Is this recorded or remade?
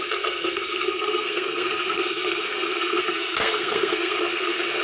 remade